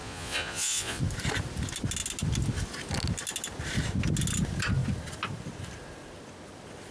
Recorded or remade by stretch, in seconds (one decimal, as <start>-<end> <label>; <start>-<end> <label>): 0.0-1.0 remade; 1.0-6.9 recorded